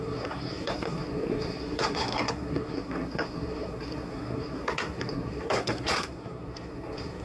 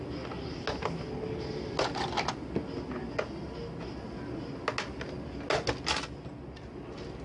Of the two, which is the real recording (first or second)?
second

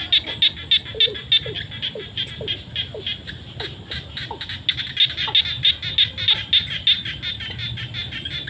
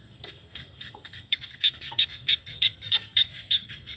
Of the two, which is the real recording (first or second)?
first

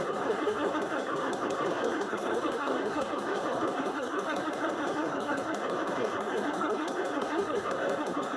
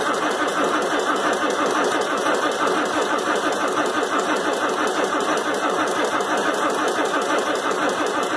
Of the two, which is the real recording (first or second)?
second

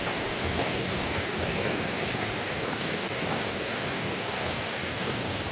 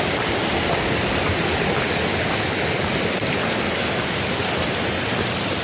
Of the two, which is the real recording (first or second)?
second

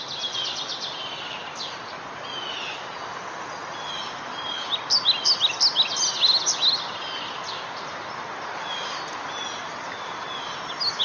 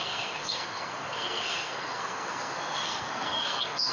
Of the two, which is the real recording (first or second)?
first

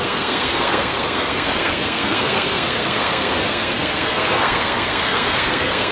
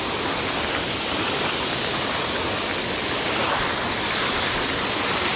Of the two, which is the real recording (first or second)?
second